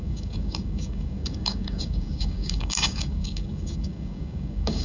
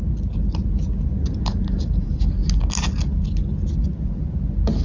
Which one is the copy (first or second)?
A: first